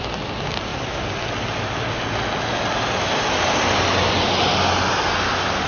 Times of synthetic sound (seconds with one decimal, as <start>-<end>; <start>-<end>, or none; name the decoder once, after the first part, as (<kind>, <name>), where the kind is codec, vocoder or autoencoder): none